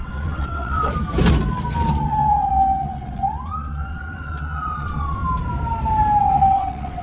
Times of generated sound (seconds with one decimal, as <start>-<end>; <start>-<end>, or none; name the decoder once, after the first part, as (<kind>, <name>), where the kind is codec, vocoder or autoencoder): 0.0-0.9 (vocoder, WaveNeXt); 1.9-5.2; 6.2-7.0